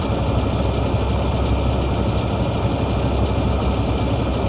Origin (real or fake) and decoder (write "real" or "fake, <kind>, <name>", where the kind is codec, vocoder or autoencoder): real